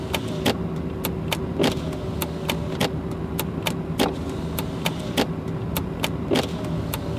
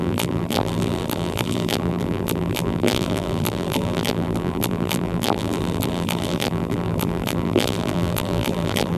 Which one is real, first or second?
first